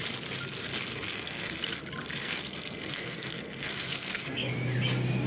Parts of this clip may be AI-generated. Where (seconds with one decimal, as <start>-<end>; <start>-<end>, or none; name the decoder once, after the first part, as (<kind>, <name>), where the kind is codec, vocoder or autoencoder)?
0.9-1.5 (codec, SNAC); 2.2-4.5